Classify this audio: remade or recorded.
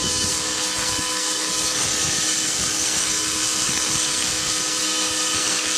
remade